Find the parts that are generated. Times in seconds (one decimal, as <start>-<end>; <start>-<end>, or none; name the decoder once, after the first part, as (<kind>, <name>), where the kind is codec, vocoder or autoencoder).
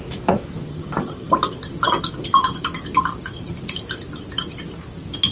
0.7-1.3 (vocoder, HiFi-GAN)